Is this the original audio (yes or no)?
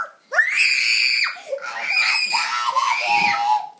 yes